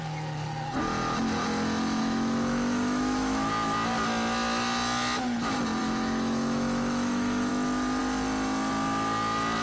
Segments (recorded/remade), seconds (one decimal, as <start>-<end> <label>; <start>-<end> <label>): 0.0-2.0 recorded; 2.0-3.5 remade; 3.5-5.8 recorded; 5.8-7.5 remade; 7.5-9.6 recorded